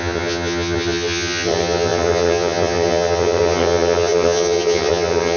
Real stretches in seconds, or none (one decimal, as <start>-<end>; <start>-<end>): none